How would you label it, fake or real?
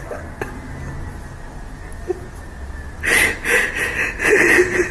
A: real